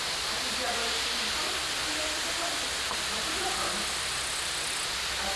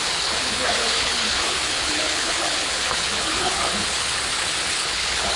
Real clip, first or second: first